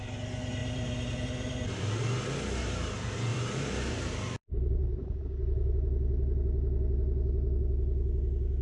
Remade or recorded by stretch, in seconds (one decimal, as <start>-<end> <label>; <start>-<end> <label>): 0.0-0.6 recorded; 0.6-1.8 remade; 1.8-3.3 recorded; 3.3-5.2 remade; 5.2-8.6 recorded